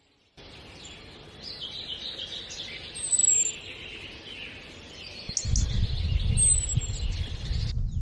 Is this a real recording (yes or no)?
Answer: yes